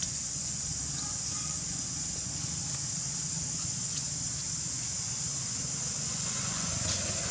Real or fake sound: fake